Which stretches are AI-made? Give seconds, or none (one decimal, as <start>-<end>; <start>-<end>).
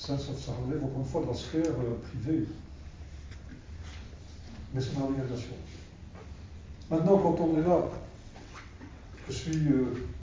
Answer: 7.5-9.3